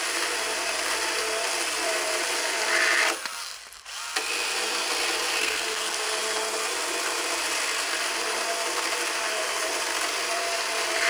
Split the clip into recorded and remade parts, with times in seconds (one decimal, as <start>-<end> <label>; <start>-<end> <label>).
0.0-5.4 recorded; 5.4-6.2 remade; 6.2-11.1 recorded